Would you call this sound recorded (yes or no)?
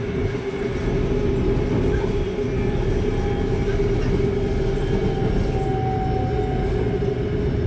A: yes